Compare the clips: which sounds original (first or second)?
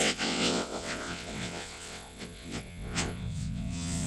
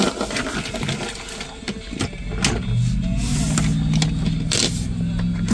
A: second